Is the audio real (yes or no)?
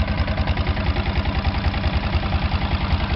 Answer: yes